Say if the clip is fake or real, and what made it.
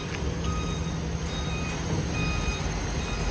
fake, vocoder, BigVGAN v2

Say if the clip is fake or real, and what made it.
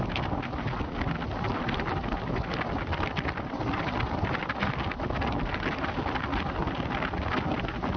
real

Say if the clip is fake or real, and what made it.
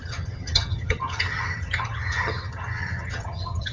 fake, vocoder, HiFi-GAN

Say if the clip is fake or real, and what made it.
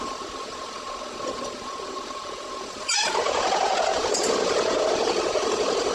fake, vocoder, Vocos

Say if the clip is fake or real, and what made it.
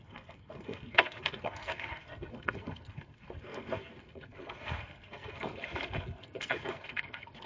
fake, codec, SNAC